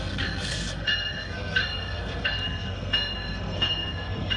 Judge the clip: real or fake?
fake